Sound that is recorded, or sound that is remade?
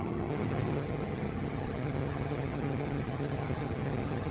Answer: remade